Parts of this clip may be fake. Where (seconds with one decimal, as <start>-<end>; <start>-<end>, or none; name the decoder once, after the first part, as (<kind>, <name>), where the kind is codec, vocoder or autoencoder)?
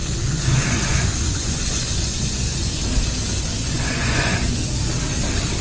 0.0-2.8 (vocoder, Vocos); 3.5-4.7